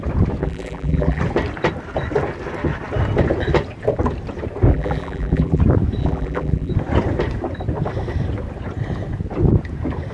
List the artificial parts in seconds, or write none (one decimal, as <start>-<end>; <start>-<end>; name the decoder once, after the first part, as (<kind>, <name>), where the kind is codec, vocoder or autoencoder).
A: 0.4-1.2 (vocoder, BigVGAN v2); 4.7-5.6; 6.0-6.7